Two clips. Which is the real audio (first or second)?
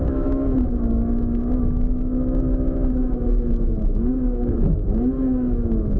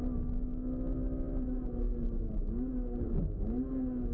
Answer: second